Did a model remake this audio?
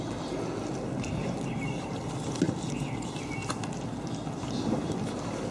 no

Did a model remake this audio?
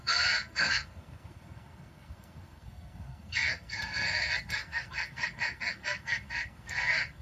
yes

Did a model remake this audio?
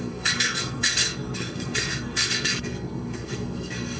yes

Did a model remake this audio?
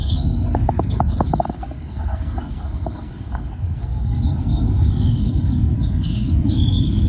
yes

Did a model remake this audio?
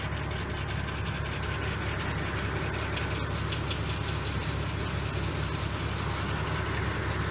no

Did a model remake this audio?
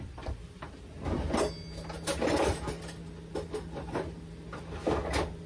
no